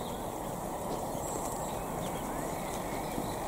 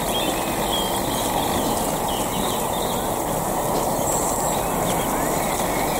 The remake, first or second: first